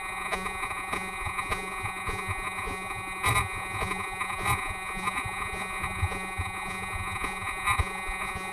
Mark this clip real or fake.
fake